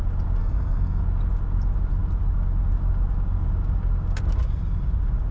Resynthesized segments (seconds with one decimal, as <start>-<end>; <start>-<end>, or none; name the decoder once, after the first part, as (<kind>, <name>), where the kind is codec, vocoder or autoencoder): 0.4-1.0 (codec, SNAC)

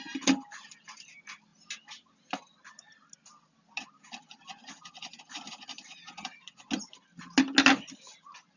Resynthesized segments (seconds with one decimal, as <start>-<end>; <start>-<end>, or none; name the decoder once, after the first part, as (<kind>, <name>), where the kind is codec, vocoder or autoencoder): none

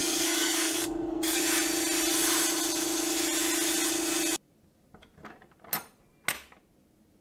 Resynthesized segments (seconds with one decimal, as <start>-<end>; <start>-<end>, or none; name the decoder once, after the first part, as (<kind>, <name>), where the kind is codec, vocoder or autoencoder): 0.0-1.4 (codec, SNAC)

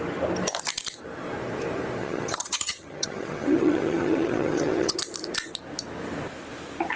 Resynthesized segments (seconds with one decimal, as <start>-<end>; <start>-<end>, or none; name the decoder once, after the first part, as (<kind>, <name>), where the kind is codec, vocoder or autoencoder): 2.0-5.0 (vocoder, HiFi-GAN)

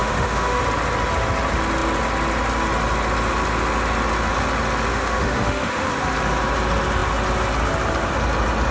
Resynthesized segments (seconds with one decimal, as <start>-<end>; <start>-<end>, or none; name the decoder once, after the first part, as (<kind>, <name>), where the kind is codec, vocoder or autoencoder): 0.0-0.6 (autoencoder, DAC-VAE); 4.9-5.9